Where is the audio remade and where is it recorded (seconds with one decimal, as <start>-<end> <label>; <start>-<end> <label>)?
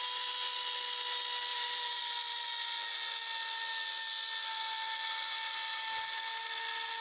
0.0-1.5 recorded; 1.5-2.0 remade; 2.0-7.0 recorded